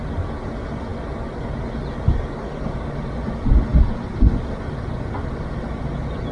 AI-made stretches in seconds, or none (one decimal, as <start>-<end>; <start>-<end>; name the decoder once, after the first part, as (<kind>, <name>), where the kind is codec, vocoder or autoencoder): none